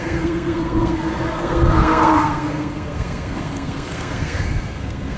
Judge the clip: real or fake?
fake